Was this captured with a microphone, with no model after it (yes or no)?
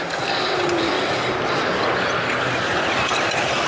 yes